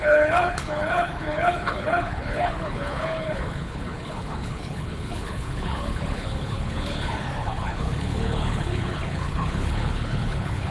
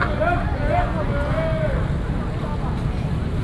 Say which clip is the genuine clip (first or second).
second